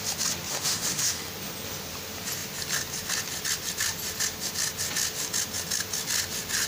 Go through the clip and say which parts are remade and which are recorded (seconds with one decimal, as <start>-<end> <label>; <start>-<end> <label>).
0.0-0.5 recorded; 0.5-1.3 remade; 1.3-6.7 recorded